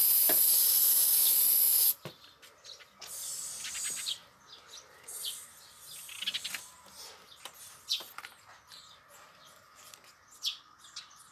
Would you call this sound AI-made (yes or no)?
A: no